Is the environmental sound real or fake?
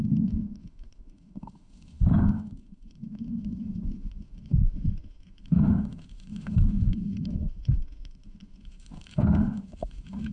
fake